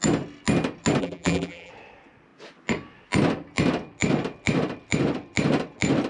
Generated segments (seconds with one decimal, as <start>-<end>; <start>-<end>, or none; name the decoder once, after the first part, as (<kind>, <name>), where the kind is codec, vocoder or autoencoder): 1.0-1.7 (vocoder, BigVGAN v2)